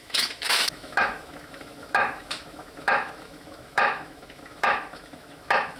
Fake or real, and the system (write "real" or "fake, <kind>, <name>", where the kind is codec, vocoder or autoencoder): fake, autoencoder, DAC-VAE